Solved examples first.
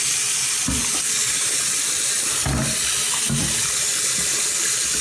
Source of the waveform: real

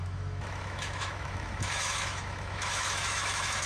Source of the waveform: fake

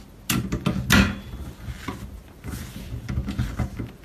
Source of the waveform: real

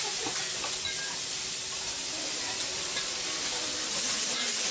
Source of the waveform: real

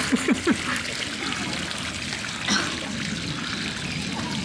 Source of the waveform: real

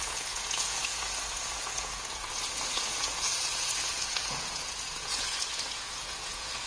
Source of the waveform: fake